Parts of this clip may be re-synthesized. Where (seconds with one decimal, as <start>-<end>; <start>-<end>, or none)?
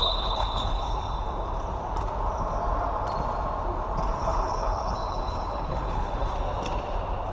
0.0-1.2; 4.2-6.3